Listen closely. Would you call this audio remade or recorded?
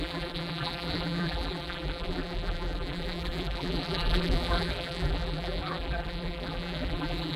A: remade